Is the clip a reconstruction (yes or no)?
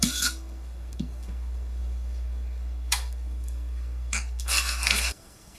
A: yes